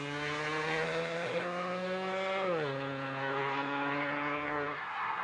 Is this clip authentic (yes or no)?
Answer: no